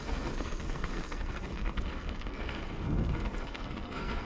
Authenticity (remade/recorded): remade